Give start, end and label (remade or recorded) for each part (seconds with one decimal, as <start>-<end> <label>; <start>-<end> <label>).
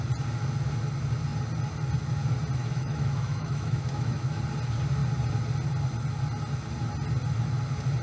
0.0-2.6 recorded; 2.6-4.4 remade; 4.4-8.0 recorded